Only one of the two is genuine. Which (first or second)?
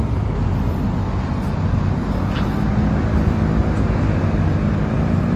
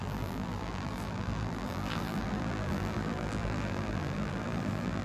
first